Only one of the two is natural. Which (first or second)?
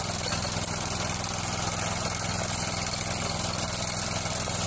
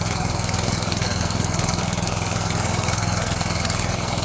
first